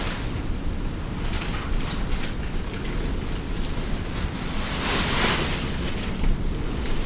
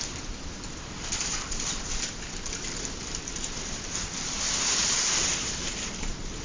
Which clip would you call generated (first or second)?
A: second